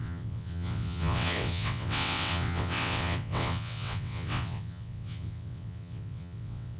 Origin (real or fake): fake